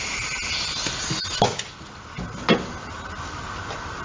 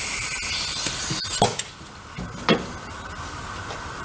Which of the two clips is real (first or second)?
first